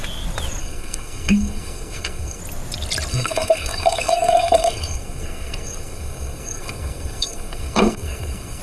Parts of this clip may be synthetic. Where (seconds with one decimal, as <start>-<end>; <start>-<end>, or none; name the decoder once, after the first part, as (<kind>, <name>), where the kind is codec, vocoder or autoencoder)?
0.6-2.4 (codec, SNAC); 3.1-8.6